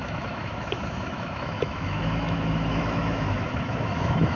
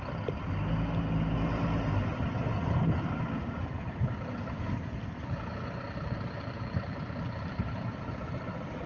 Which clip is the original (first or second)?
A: second